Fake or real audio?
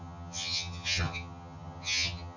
fake